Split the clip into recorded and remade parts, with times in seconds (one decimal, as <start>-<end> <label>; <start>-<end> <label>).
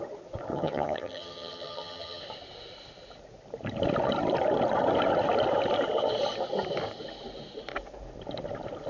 0.0-0.5 recorded; 0.5-2.2 remade; 2.2-8.9 recorded